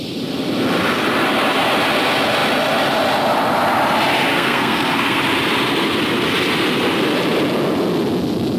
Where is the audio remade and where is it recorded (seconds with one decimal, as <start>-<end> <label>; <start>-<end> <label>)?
0.0-4.3 recorded; 4.3-5.2 remade; 5.2-8.6 recorded